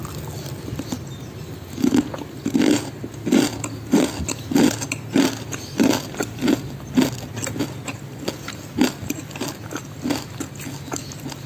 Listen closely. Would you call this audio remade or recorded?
recorded